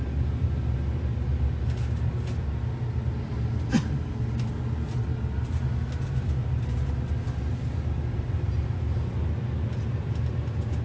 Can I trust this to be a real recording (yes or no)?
yes